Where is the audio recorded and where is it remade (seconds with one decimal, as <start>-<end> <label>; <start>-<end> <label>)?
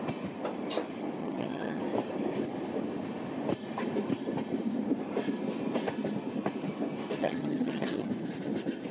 0.0-1.2 recorded; 1.2-1.8 remade; 1.8-7.2 recorded; 7.2-8.1 remade; 8.1-8.9 recorded